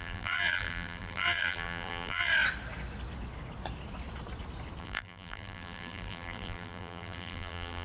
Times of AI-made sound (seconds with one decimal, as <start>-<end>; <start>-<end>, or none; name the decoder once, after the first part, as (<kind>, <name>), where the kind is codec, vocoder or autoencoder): 0.0-2.3 (vocoder, BigVGAN v2); 4.8-7.8